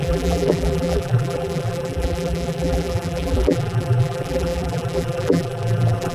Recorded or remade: remade